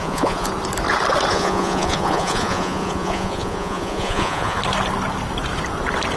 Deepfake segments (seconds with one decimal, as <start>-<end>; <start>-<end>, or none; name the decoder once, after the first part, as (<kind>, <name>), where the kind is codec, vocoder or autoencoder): 0.0-0.5 (vocoder, Vocos); 1.3-4.6